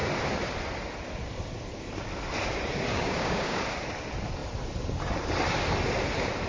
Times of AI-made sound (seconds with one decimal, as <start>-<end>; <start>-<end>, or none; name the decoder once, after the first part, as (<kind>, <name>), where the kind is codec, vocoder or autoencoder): 2.9-3.6 (codec, DAC)